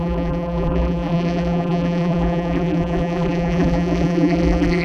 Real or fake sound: fake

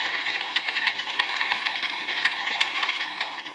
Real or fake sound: fake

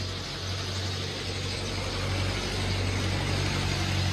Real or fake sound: real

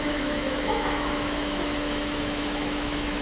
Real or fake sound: fake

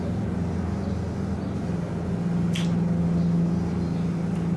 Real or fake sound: real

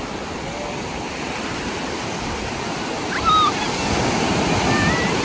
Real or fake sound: real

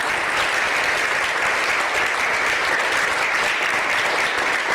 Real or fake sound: real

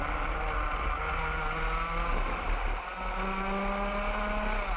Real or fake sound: real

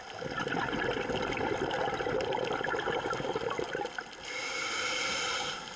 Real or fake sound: real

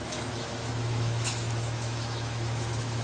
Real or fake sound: fake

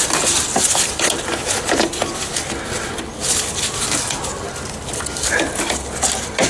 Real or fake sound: real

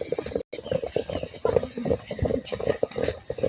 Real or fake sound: real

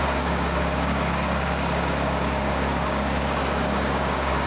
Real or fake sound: fake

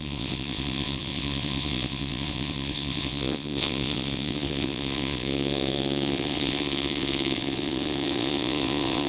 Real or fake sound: fake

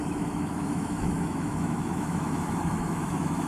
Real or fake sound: fake